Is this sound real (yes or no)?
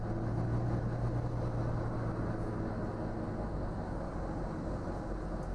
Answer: yes